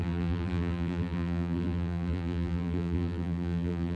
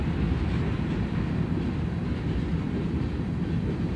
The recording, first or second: second